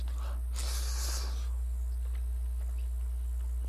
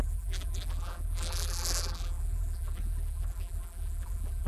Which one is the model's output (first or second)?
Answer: second